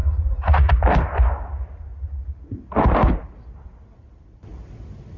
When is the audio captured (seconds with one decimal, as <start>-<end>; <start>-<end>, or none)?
0.7-5.2